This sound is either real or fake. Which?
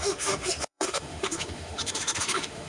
fake